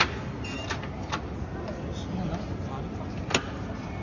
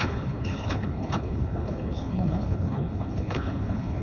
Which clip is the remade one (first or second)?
second